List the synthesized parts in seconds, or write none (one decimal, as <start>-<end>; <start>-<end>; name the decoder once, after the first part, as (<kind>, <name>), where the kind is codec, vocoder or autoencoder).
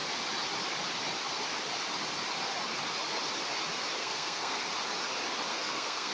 4.0-4.6 (codec, SNAC); 5.5-6.1